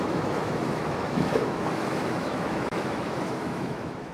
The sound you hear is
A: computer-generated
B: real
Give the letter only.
A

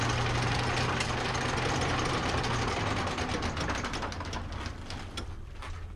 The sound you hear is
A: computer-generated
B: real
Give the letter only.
B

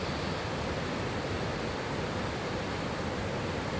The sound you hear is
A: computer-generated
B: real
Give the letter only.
B